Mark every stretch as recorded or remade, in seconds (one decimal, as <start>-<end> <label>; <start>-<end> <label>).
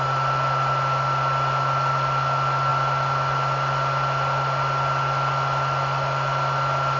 0.0-7.0 recorded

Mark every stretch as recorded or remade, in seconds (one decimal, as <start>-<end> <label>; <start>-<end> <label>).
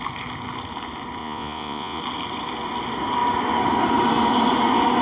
0.0-1.2 recorded; 1.2-2.0 remade; 2.0-5.0 recorded